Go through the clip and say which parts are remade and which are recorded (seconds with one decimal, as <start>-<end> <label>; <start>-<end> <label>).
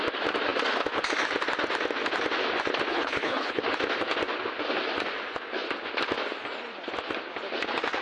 0.0-2.9 recorded; 2.9-3.6 remade; 3.6-8.0 recorded